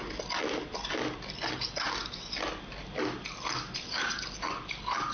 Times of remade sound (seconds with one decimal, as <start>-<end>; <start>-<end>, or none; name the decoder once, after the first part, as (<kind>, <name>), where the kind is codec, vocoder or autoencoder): none